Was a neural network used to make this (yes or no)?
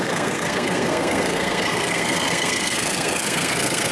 yes